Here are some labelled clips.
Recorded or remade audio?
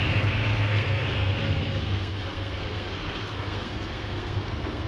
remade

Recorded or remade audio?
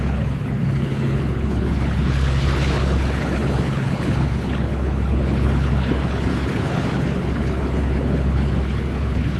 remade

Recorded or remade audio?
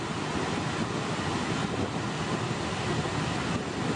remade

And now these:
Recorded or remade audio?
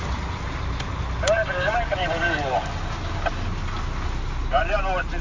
recorded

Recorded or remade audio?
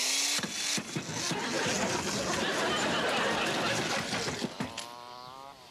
recorded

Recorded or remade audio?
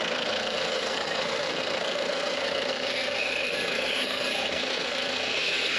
remade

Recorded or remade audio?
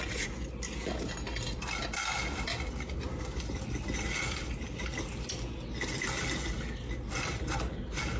recorded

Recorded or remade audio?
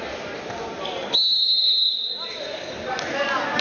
recorded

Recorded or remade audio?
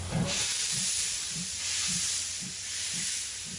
remade